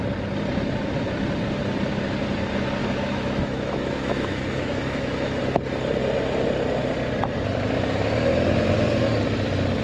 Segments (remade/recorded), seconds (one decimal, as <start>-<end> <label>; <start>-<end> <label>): 0.0-2.8 recorded; 2.8-5.4 remade; 5.4-9.8 recorded